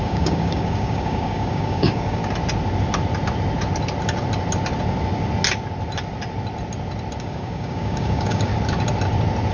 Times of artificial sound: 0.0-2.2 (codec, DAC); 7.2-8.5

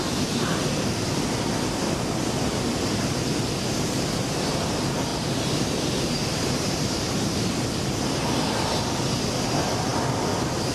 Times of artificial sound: 5.1-7.7 (vocoder, BigVGAN v2)

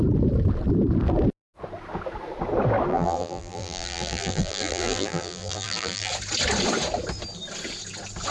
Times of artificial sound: 2.9-6.1 (vocoder, BigVGAN v2)

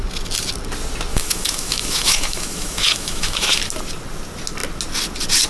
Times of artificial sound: 1.1-3.6 (autoencoder, DAC-VAE)